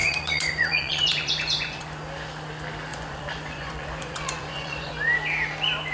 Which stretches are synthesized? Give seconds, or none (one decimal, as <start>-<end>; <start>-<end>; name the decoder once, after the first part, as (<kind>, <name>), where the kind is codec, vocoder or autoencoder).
0.0-2.0 (vocoder, Vocos); 2.9-4.9